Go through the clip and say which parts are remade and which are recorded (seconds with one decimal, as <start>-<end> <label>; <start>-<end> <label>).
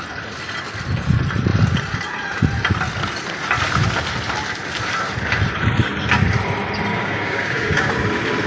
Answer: 0.0-6.9 recorded; 6.9-7.9 remade; 7.9-8.5 recorded